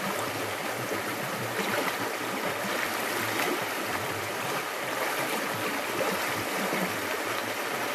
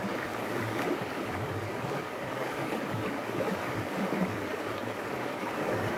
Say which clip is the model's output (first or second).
second